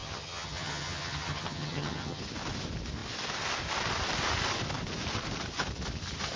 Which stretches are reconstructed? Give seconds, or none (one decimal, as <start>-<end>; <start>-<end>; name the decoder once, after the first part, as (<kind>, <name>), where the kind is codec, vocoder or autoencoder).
0.0-2.2 (vocoder, HiFi-GAN)